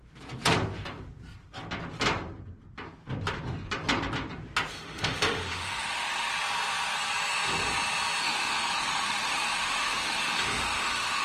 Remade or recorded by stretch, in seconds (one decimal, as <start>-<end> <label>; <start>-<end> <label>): 0.0-4.7 recorded; 4.7-6.3 remade; 6.3-8.2 recorded; 8.2-11.2 remade

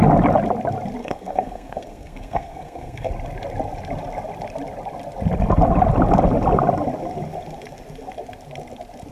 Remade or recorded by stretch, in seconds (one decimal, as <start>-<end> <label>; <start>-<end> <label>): 0.0-1.0 recorded; 1.0-3.1 remade; 3.1-9.1 recorded

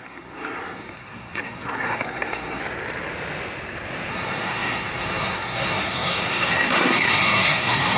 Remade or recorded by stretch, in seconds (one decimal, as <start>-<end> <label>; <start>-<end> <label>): 0.0-2.6 remade; 2.6-4.1 recorded; 4.1-8.0 remade

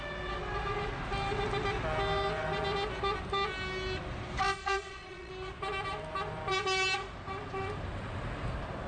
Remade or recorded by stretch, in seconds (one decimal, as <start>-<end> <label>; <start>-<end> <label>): 0.0-4.6 recorded; 4.6-5.3 remade; 5.3-8.9 recorded

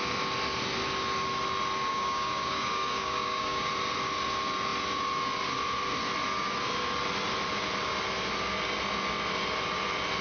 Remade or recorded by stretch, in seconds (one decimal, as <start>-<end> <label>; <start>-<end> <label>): 0.0-1.9 recorded; 1.9-3.7 remade; 3.7-10.2 recorded